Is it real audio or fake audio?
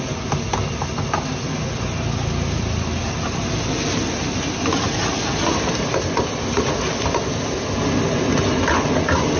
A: real